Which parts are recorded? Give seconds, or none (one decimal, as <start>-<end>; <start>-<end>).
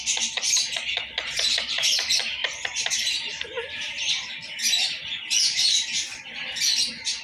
0.0-7.2